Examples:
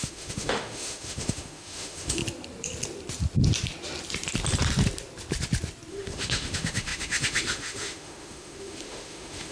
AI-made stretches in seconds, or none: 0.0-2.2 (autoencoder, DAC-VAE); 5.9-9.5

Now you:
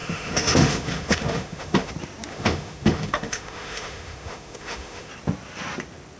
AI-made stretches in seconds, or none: 0.0-1.9 (autoencoder, DAC-VAE); 2.3-5.1

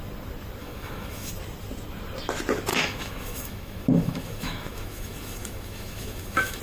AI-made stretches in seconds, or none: 0.6-1.3 (autoencoder, DAC-VAE); 2.7-6.6

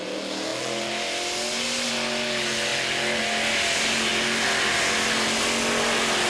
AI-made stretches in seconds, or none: none